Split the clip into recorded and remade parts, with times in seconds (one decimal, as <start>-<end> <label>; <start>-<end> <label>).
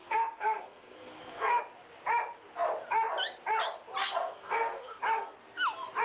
0.0-1.6 remade; 1.6-4.0 recorded; 4.0-5.0 remade; 5.0-6.0 recorded